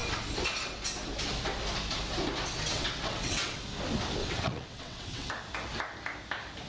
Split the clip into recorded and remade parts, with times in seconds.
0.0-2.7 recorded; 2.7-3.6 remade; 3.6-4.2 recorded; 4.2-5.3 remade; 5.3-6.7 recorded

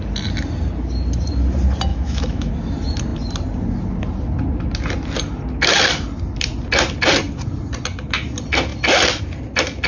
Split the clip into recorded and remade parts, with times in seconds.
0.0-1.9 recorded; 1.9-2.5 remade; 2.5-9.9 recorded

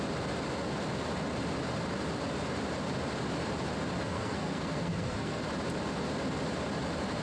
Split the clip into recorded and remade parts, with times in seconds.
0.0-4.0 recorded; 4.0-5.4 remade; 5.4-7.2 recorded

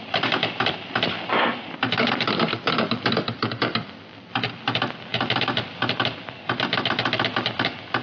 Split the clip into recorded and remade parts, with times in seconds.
0.0-8.0 recorded

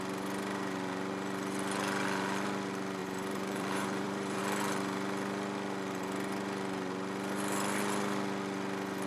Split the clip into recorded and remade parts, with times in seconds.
0.0-3.0 recorded; 3.0-4.4 remade; 4.4-9.1 recorded

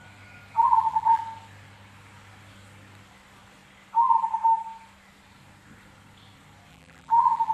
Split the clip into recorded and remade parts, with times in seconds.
0.0-0.6 recorded; 0.6-1.2 remade; 1.2-6.7 recorded; 6.7-7.5 remade